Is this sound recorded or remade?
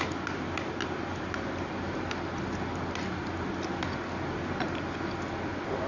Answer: recorded